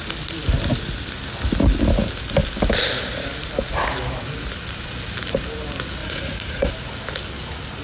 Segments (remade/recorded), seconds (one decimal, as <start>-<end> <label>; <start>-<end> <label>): 0.0-6.0 recorded; 6.0-6.7 remade; 6.7-7.8 recorded